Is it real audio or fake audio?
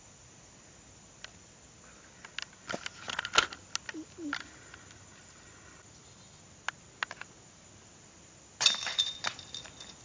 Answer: real